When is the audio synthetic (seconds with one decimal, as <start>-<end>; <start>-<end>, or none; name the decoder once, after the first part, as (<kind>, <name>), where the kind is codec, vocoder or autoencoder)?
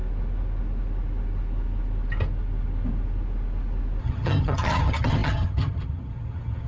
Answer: 4.0-6.7 (vocoder, HiFi-GAN)